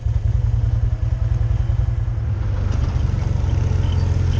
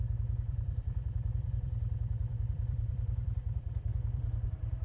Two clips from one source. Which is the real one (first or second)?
first